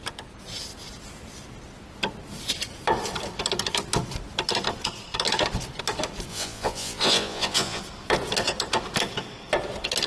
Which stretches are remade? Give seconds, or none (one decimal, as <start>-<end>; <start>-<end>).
6.3-7.8